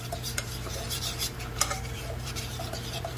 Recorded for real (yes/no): no